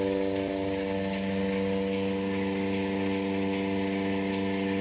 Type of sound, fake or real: real